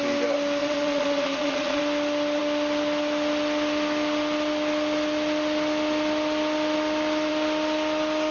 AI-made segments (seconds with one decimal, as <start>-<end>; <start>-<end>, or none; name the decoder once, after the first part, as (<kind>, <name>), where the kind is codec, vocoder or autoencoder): 0.6-1.8 (vocoder, Vocos)